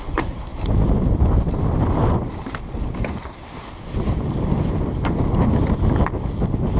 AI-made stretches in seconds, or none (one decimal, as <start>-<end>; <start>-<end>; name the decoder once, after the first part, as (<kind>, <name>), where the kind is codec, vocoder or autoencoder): none